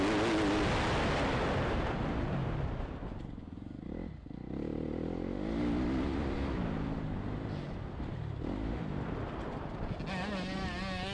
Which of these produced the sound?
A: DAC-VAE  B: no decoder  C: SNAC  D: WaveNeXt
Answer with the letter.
B